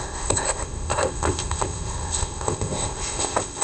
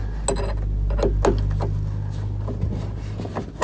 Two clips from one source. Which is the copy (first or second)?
first